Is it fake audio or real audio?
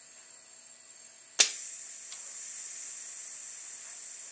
real